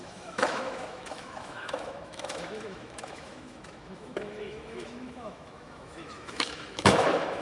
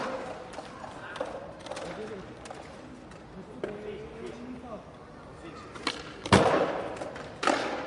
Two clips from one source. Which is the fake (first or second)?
first